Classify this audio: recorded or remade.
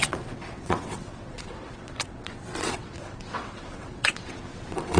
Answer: remade